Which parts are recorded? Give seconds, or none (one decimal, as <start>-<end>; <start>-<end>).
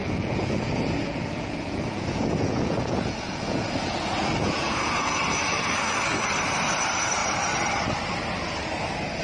5.2-9.2